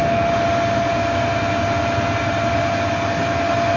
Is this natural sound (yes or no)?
yes